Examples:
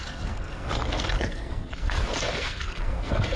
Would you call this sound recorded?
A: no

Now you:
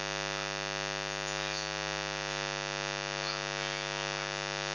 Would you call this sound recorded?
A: yes